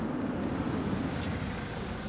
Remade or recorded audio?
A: recorded